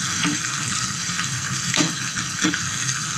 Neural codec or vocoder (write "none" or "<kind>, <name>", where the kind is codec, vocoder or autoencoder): codec, SNAC